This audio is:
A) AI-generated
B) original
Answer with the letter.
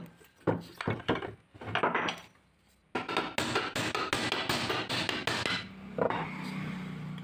B